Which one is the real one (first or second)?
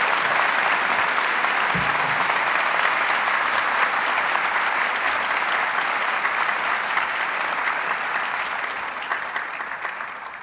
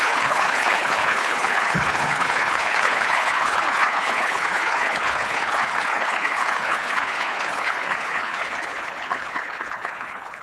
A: first